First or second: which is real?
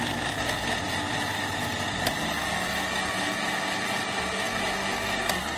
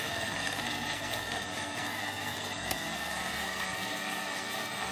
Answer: first